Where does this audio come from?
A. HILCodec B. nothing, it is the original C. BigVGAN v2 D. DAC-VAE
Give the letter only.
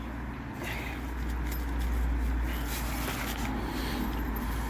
B